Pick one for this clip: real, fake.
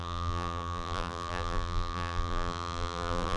fake